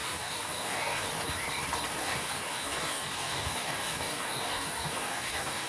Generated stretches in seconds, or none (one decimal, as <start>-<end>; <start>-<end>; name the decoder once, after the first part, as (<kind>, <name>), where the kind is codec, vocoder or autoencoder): 0.0-1.1 (codec, DAC); 2.0-5.7